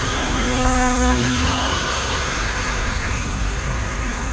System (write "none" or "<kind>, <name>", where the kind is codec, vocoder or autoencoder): codec, SNAC